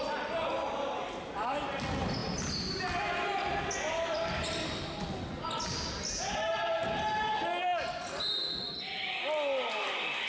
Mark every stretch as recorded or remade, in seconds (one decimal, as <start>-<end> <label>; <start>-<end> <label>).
0.0-10.3 recorded